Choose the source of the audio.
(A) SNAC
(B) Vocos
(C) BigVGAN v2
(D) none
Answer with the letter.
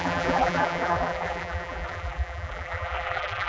C